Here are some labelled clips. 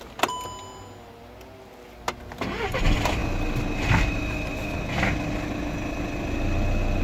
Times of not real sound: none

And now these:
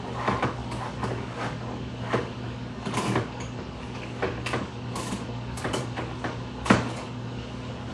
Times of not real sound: 0.0-7.9

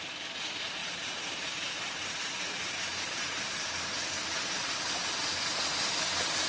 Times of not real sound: 0.8-4.7